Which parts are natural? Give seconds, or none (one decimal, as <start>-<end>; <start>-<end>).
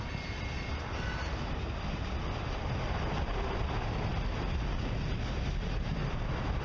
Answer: 0.0-6.6